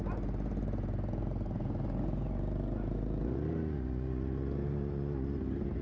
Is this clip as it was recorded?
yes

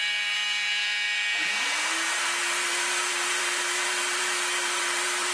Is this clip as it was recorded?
no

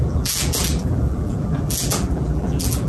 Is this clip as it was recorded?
no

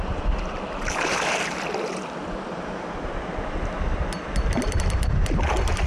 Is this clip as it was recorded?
yes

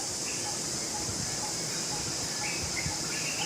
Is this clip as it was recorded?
no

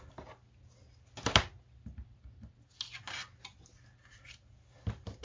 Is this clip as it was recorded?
yes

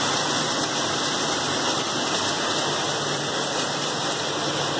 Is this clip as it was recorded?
yes